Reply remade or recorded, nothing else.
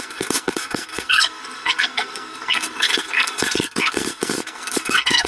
remade